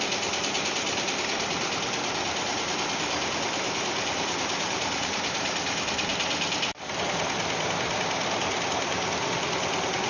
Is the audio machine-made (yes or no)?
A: no